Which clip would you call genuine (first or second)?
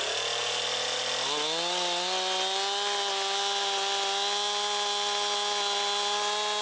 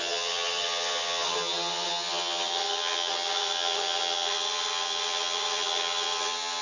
first